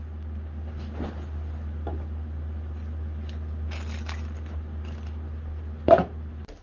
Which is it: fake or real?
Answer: real